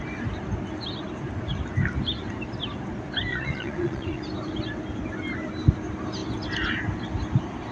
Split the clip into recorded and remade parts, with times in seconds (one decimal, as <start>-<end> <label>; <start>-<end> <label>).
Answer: 0.0-3.3 recorded; 3.3-4.2 remade; 4.2-7.7 recorded